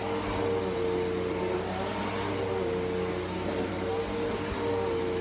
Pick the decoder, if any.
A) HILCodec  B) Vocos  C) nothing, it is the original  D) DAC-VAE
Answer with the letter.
C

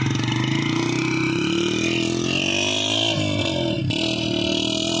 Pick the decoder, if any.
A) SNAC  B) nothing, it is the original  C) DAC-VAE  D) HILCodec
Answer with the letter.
B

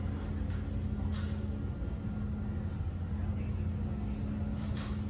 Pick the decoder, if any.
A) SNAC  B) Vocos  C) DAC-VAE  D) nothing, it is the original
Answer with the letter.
D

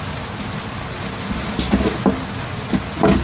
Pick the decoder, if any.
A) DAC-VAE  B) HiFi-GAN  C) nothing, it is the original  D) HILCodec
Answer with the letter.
C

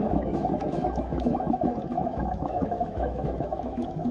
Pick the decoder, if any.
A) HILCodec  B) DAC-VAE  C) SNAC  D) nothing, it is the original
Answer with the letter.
B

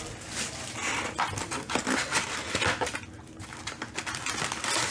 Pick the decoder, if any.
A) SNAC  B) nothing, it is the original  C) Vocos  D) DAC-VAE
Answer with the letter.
B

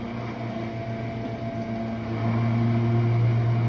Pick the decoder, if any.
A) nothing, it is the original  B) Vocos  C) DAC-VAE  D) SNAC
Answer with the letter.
A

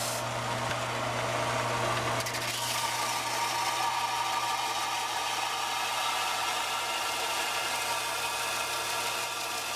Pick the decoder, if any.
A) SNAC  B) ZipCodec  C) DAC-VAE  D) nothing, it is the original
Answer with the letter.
D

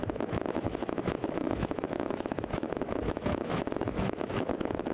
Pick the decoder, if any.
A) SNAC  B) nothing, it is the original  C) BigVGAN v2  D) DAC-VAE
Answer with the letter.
D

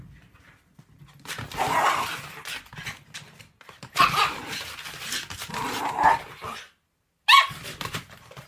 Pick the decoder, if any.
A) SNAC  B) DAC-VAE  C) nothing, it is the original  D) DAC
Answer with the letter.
C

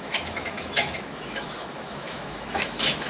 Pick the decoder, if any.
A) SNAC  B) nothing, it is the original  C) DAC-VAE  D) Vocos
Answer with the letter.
C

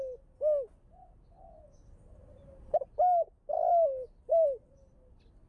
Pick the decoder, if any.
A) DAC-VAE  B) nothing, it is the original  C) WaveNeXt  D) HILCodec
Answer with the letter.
B